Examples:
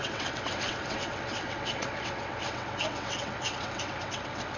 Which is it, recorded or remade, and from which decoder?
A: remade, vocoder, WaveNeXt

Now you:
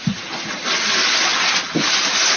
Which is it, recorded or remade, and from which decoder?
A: recorded